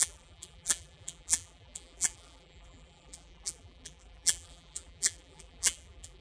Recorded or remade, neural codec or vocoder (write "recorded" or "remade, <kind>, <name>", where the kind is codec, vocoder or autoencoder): remade, vocoder, BigVGAN v2